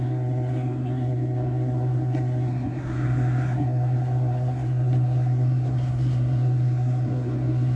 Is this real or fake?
fake